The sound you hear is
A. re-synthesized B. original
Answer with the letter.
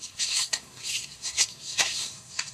A